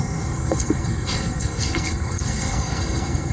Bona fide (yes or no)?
no